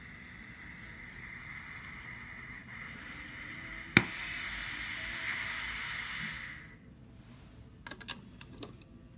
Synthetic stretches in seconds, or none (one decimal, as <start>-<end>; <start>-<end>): none